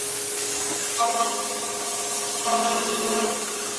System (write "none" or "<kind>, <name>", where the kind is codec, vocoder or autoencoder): codec, DAC